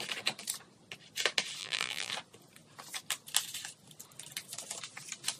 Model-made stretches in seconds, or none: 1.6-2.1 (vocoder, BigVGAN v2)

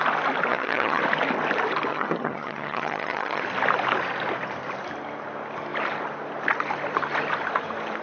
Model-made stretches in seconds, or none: 0.5-1.0 (vocoder, HiFi-GAN); 1.9-3.4

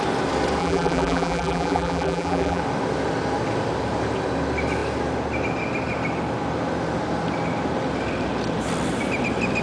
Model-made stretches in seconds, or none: 0.6-2.6 (vocoder, BigVGAN v2)

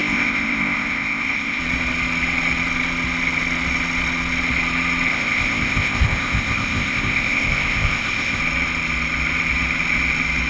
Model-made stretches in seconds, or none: 0.0-1.6 (codec, ZipCodec); 5.1-8.4

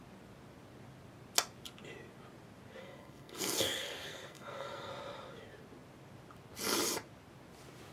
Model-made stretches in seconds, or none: 2.8-4.9 (codec, SNAC)